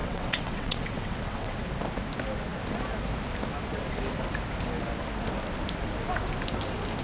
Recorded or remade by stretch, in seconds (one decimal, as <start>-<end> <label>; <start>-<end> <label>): 0.0-1.6 remade; 1.6-7.0 recorded